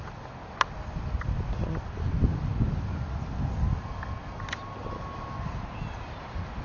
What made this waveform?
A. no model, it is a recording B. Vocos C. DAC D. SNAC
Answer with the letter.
A